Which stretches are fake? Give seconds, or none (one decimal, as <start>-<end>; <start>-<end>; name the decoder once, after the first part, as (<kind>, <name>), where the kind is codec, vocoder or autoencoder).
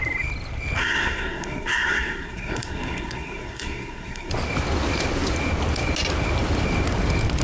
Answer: 0.8-4.3 (codec, SNAC)